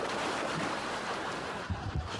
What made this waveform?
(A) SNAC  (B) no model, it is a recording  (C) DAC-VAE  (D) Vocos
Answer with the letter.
B